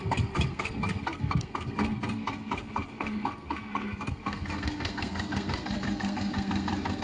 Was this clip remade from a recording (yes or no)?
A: yes